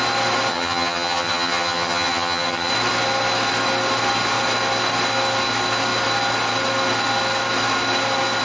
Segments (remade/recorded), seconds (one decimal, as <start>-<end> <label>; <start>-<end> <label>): 0.0-0.5 recorded; 0.5-2.7 remade; 2.7-8.4 recorded